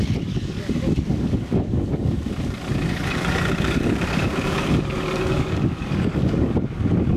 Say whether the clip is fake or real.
fake